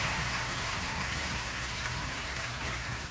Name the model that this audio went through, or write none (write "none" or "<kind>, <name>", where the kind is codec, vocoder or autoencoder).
codec, SNAC